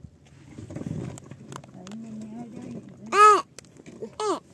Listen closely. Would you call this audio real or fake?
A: real